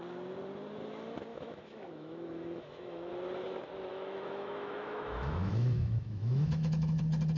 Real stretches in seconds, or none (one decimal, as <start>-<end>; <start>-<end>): 0.0-1.3; 3.1-3.9; 7.0-7.4